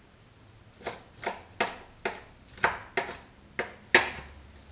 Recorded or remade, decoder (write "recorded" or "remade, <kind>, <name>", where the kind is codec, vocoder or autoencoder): recorded